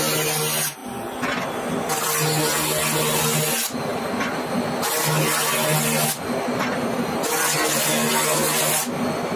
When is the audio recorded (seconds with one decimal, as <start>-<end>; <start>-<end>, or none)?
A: 0.0-9.4

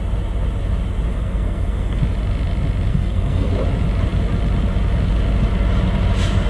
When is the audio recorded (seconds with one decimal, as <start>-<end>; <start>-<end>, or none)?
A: 0.0-1.1; 2.0-2.9; 3.5-6.5

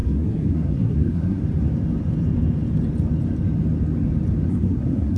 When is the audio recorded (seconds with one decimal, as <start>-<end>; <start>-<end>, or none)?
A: 1.4-4.5

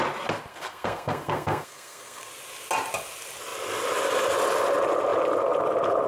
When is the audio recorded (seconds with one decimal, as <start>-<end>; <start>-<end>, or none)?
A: 0.0-0.5; 2.3-6.1

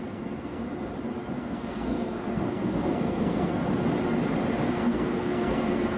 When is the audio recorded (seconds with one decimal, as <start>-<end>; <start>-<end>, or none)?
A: 0.6-1.4; 3.6-4.7

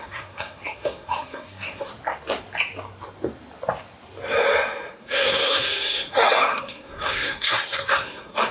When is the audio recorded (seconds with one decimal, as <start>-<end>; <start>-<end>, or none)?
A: 1.9-5.0

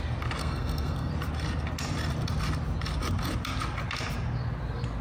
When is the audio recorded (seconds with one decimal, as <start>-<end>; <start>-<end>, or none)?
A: 0.0-0.4; 1.1-5.0